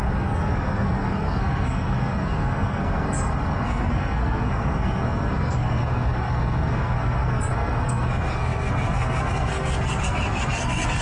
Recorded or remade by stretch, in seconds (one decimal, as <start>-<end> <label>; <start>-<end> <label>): 0.0-11.0 remade